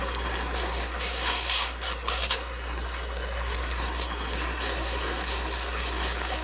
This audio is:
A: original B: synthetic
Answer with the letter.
B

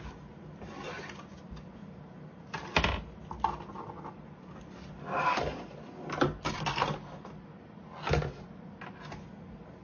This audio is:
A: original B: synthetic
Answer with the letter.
A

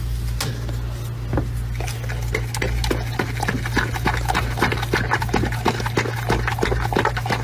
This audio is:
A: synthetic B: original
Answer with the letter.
B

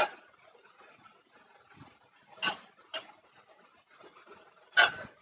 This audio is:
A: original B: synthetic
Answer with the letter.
A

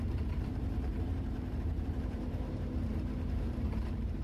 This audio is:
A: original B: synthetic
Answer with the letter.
B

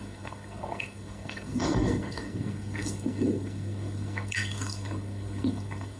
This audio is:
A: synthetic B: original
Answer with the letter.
A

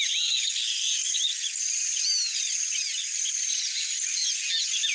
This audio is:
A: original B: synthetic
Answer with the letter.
A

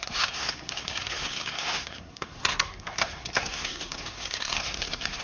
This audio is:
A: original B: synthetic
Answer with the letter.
B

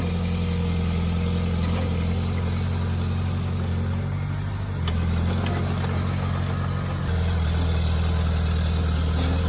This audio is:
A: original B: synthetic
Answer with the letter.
A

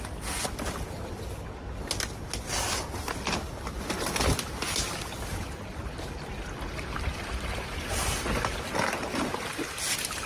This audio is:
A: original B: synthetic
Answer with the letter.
A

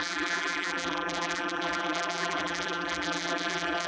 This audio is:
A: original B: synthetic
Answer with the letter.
B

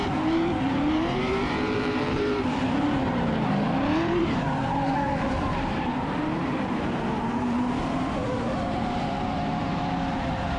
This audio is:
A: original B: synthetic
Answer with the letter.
B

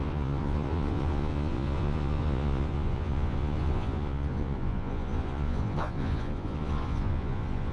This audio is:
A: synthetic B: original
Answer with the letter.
A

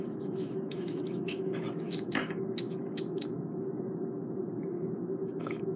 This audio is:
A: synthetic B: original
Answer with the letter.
A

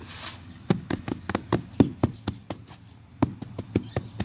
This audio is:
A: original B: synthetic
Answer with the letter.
A